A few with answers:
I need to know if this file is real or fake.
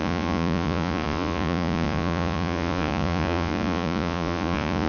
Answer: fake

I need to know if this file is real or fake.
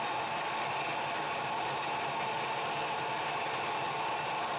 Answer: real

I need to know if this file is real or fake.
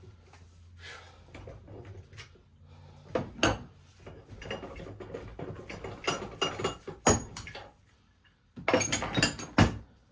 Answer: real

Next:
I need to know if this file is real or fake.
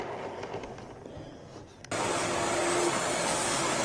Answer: real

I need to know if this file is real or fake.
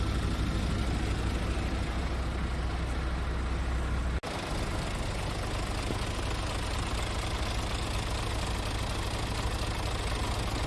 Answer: real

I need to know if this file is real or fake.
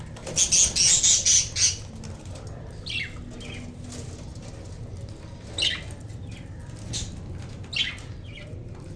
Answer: real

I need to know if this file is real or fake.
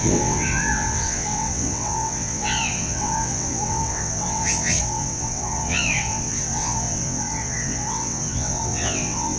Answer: fake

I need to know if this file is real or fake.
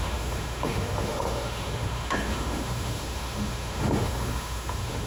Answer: fake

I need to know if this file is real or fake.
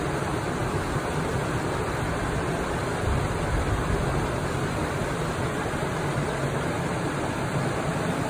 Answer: real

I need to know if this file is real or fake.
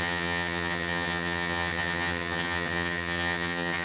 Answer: fake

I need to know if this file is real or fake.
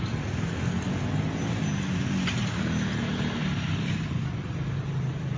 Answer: real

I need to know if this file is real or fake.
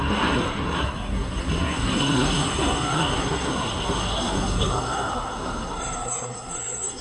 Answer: fake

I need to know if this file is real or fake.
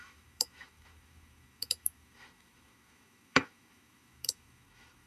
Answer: fake